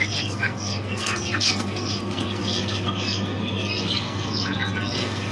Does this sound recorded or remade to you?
remade